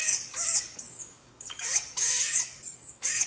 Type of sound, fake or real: fake